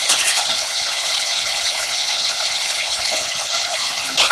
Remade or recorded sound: remade